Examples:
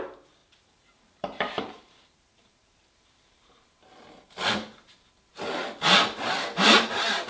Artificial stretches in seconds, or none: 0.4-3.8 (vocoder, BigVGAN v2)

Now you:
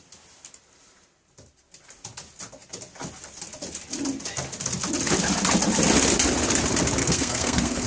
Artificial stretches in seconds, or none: 7.0-7.9 (codec, SNAC)

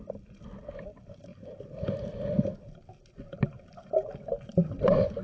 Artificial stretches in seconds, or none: none

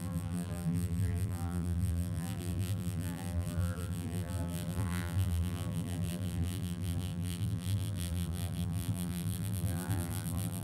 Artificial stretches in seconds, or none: 0.0-10.6 (vocoder, BigVGAN v2)

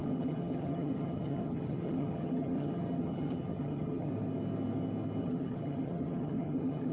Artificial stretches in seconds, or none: 0.0-4.1 (vocoder, HiFi-GAN); 5.2-6.9

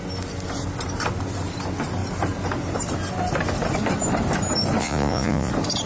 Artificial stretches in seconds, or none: 4.8-5.5 (vocoder, Vocos)

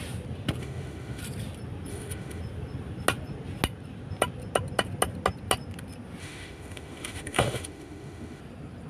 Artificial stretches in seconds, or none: 0.6-1.2 (autoencoder, DAC-VAE); 1.9-2.4; 6.2-8.4

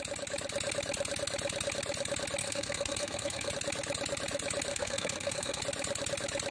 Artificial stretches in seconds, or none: 2.4-3.5 (codec, SNAC); 4.7-5.6